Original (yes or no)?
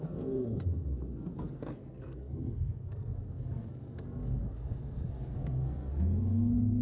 no